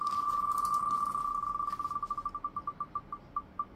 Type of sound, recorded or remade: recorded